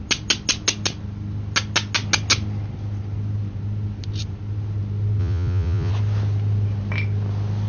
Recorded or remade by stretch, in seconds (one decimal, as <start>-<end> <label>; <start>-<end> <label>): 0.0-5.2 recorded; 5.2-5.9 remade; 5.9-7.7 recorded

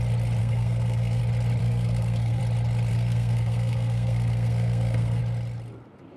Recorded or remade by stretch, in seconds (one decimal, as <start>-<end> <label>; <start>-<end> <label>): 0.0-0.4 recorded; 0.4-1.2 remade; 1.2-1.6 recorded; 1.6-2.4 remade; 2.4-2.9 recorded; 2.9-5.2 remade; 5.2-6.2 recorded

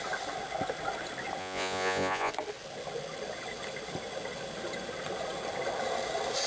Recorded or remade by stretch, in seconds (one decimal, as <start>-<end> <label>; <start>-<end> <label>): 0.0-1.4 recorded; 1.4-2.3 remade; 2.3-6.5 recorded